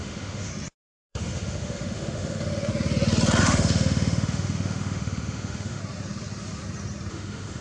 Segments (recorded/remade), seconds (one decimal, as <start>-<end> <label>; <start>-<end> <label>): 0.0-0.5 remade; 0.5-1.1 recorded; 1.1-2.7 remade; 2.7-3.4 recorded; 3.4-5.8 remade; 5.8-7.1 recorded; 7.1-7.6 remade